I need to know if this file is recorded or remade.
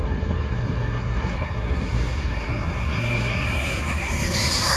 remade